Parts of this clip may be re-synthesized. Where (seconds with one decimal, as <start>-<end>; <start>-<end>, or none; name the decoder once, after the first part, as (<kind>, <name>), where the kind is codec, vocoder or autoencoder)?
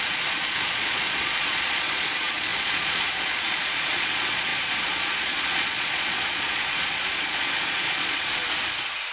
0.0-8.4 (vocoder, Vocos)